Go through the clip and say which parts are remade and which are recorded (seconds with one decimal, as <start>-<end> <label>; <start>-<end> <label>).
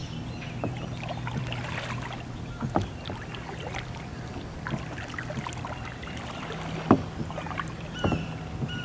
0.0-8.8 recorded